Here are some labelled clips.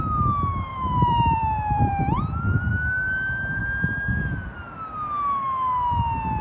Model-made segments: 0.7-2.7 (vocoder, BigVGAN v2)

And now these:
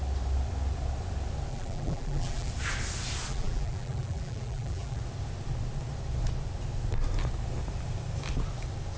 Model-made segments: 1.5-2.5 (vocoder, BigVGAN v2); 3.3-5.0

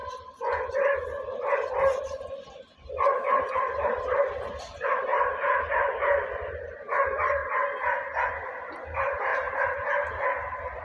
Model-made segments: 0.0-7.4 (vocoder, BigVGAN v2); 8.7-9.3

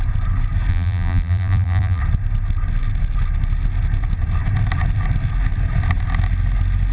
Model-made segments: 0.7-2.0 (vocoder, BigVGAN v2)

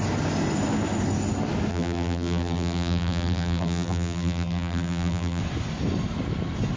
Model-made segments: 1.7-5.4 (vocoder, BigVGAN v2)